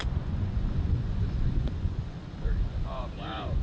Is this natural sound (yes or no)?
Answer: no